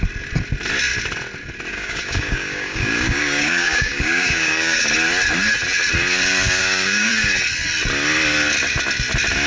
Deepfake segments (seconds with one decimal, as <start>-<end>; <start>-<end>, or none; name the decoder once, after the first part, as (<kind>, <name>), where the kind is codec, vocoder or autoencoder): 1.7-4.8 (codec, DAC); 6.6-7.1